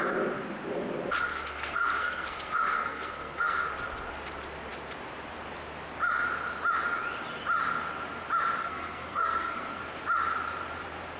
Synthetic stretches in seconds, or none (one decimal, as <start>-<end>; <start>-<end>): 1.3-3.7; 8.6-9.8